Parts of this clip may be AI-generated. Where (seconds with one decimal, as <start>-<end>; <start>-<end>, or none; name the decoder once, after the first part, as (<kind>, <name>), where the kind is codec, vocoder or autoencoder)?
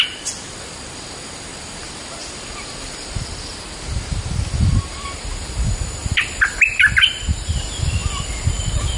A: 1.5-5.5 (vocoder, BigVGAN v2); 6.0-6.7; 8.0-9.0